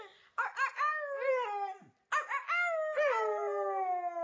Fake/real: real